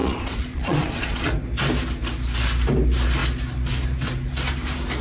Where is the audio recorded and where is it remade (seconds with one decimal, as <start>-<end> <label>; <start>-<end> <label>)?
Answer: 0.0-1.3 remade; 1.3-5.0 recorded